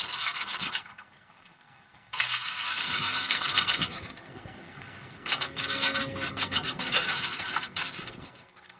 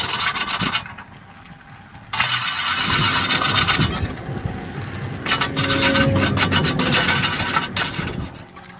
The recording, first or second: second